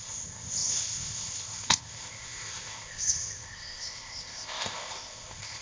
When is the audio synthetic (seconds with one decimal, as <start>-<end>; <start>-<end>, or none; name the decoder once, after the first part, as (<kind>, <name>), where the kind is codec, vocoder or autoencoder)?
0.0-5.6 (codec, ZipCodec)